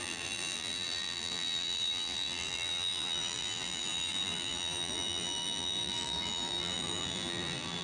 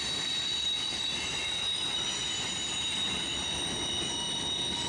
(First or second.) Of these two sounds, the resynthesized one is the first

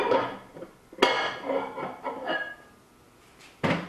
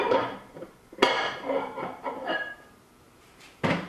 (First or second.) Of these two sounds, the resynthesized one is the second